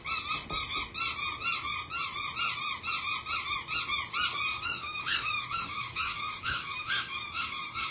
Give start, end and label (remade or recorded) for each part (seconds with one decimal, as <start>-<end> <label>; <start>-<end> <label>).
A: 0.0-4.5 recorded; 4.5-7.9 remade